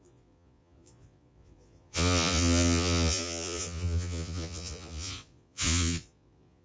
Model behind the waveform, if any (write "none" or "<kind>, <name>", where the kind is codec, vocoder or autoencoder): vocoder, Vocos